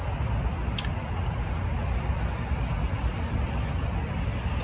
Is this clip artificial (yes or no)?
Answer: no